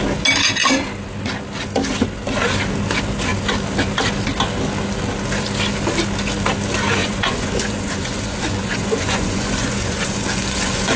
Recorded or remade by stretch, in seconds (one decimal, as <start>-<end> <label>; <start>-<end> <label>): 0.0-7.0 recorded; 7.0-11.0 remade